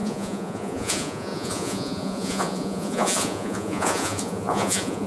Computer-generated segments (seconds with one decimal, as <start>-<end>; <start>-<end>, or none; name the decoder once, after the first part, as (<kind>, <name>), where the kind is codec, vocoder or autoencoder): 0.0-5.1 (vocoder, Vocos)